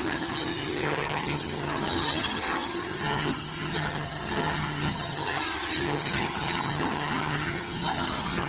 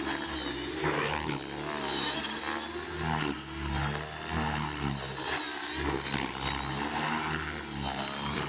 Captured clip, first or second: second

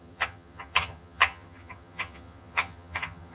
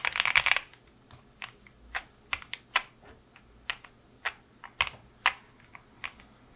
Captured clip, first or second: second